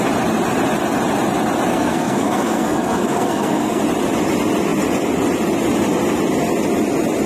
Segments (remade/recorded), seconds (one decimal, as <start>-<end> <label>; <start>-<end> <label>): 0.0-1.7 recorded; 1.7-3.8 remade; 3.8-7.3 recorded